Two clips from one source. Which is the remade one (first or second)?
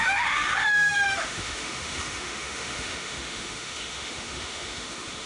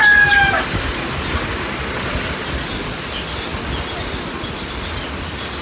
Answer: first